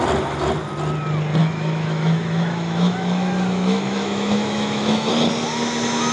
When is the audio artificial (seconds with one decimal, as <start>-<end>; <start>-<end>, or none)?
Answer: 1.4-5.1